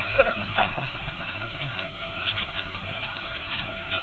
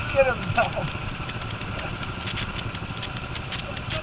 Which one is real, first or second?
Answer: second